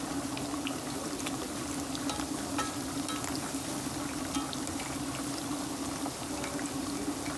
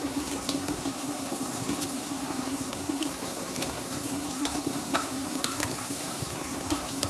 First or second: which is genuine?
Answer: first